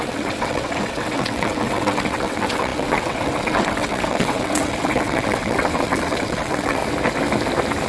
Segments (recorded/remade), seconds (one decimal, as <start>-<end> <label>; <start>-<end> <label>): 0.0-6.8 remade; 6.8-7.9 recorded

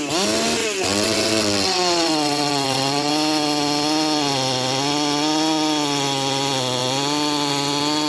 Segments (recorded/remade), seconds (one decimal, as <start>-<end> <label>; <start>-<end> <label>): 0.0-0.6 recorded; 0.6-3.1 remade; 3.1-8.1 recorded

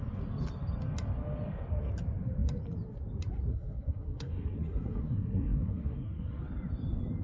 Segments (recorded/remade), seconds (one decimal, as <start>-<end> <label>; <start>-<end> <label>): 0.0-3.5 recorded; 3.5-6.4 remade; 6.4-7.2 recorded

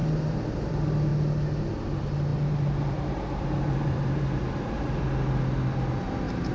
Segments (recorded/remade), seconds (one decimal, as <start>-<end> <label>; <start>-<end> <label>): 0.0-2.3 recorded; 2.3-4.9 remade; 4.9-6.5 recorded